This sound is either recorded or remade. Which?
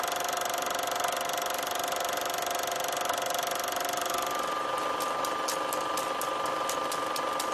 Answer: recorded